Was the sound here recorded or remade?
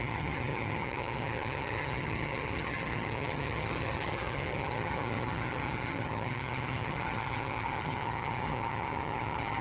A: remade